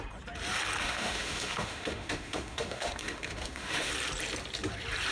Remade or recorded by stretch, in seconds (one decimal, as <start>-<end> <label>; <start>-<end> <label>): 0.0-0.8 recorded; 0.8-3.9 remade; 3.9-5.1 recorded

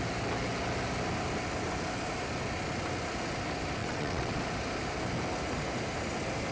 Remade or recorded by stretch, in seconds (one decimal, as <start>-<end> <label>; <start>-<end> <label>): 0.0-3.8 recorded; 3.8-4.4 remade; 4.4-6.5 recorded